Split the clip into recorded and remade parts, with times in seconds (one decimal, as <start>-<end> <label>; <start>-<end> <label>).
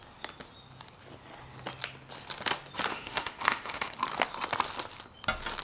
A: 0.0-2.9 recorded; 2.9-4.0 remade; 4.0-5.6 recorded